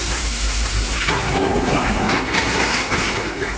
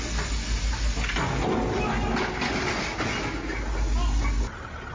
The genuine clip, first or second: second